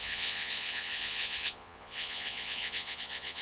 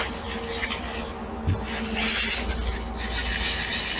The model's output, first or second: first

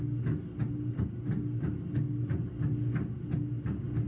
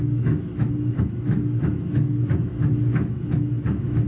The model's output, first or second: second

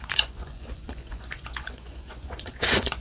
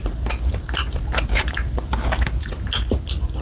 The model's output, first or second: first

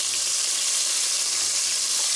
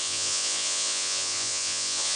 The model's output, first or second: second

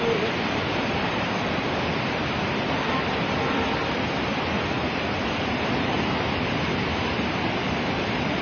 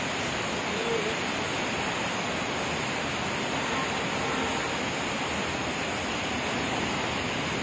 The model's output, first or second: first